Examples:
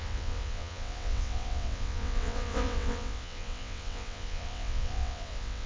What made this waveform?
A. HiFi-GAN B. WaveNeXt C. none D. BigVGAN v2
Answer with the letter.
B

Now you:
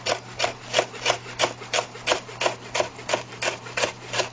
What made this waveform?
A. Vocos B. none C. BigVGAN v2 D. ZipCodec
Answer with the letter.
B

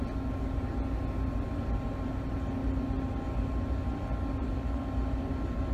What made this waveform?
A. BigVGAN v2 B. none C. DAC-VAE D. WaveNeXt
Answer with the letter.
B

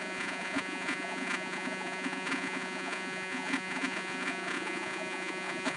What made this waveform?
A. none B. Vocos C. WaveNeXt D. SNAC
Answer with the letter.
B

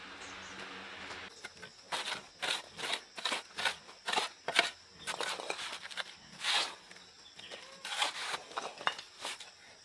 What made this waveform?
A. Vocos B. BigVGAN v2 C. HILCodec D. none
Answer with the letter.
D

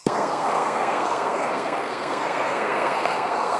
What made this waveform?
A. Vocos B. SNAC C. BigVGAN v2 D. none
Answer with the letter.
B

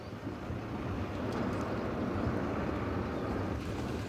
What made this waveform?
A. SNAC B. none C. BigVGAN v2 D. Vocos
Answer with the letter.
B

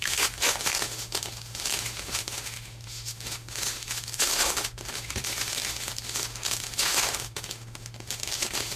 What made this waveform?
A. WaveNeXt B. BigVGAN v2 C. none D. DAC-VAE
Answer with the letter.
D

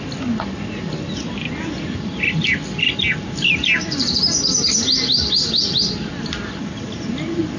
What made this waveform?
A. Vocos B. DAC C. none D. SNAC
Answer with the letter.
C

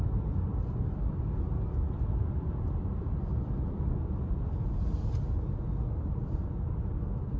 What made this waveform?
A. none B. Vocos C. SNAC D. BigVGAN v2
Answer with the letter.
A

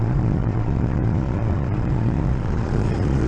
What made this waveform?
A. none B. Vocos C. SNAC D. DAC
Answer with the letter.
B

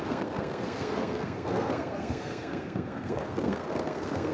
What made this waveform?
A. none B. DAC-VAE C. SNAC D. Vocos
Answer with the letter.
C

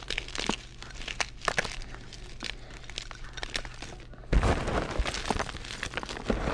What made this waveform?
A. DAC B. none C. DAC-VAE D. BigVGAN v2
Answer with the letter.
B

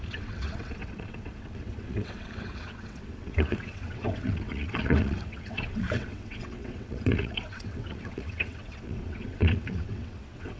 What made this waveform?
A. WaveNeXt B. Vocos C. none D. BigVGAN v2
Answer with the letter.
A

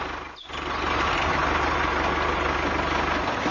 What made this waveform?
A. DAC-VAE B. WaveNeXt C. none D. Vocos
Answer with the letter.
C